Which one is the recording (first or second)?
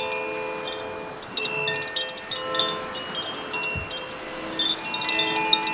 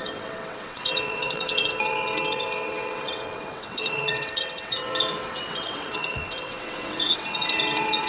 first